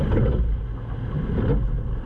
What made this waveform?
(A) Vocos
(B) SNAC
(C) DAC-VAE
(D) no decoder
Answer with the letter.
D